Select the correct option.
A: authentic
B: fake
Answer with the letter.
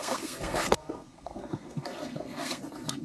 B